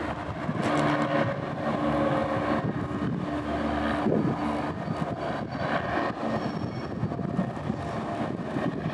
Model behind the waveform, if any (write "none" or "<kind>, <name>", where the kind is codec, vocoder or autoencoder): none